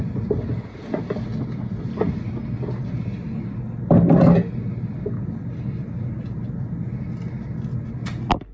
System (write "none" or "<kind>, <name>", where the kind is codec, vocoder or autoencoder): none